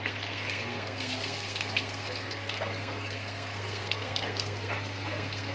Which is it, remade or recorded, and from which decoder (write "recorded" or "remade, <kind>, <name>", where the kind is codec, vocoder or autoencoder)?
remade, codec, SNAC